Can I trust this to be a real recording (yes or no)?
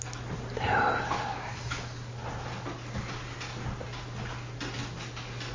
yes